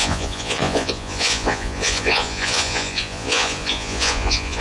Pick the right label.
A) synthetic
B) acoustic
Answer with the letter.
A